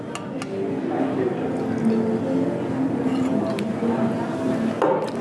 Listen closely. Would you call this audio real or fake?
real